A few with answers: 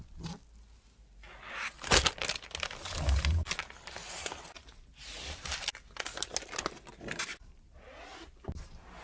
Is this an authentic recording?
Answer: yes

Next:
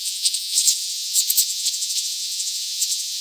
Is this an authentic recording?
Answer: no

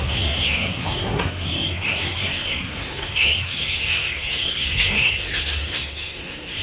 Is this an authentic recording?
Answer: no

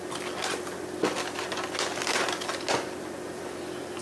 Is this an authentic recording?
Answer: yes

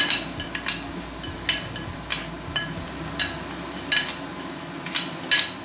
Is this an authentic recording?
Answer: yes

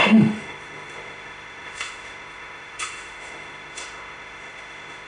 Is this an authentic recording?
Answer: no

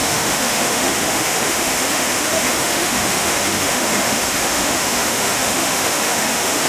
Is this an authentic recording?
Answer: no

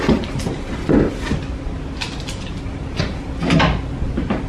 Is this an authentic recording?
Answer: yes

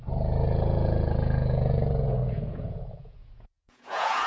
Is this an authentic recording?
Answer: no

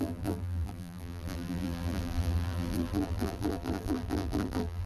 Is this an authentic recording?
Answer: no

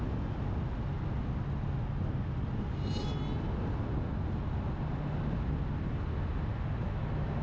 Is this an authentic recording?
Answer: yes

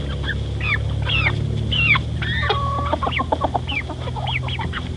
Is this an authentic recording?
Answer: yes